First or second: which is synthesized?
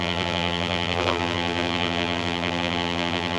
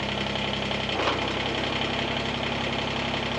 first